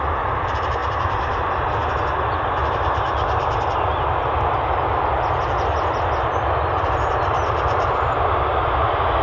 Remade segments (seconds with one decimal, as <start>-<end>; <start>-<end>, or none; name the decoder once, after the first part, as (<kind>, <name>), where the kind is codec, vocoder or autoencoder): none